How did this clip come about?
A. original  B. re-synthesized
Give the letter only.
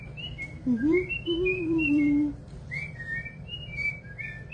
B